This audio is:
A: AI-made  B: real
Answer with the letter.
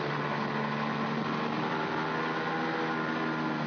B